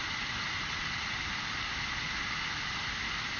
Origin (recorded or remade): recorded